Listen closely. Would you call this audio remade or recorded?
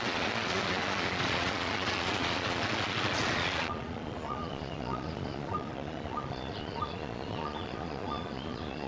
remade